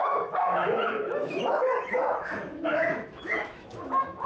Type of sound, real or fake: fake